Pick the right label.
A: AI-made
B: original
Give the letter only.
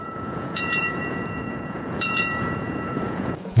A